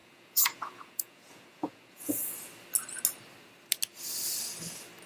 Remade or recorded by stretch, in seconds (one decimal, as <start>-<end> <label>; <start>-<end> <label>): 0.0-2.1 remade; 2.1-5.1 recorded